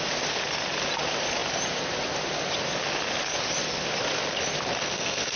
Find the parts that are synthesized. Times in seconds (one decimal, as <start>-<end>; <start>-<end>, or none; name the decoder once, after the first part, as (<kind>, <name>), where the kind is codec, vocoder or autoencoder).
4.8-5.4 (codec, SNAC)